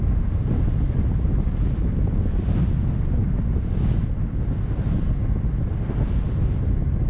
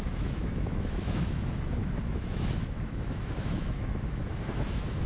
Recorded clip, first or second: first